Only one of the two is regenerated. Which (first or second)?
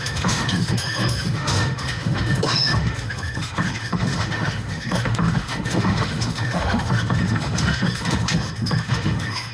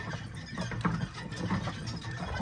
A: first